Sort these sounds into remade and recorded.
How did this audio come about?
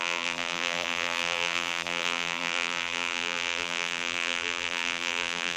remade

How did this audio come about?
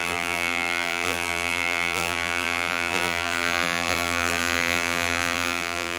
remade